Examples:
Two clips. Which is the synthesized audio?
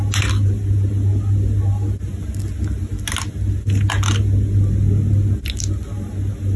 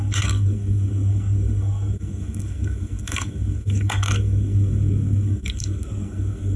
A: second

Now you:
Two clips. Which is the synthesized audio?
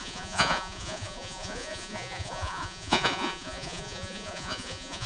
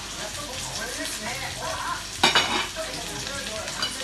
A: first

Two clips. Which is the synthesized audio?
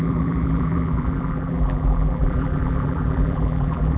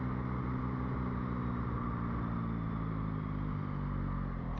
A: first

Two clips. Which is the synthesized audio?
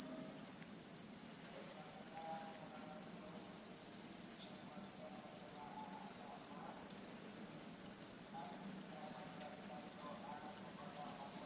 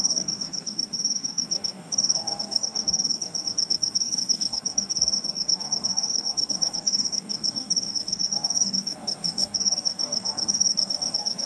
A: second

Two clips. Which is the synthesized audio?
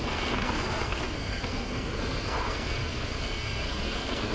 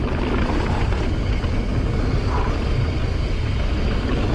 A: first